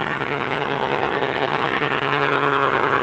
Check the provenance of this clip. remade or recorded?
remade